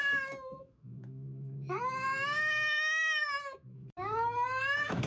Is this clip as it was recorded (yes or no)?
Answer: no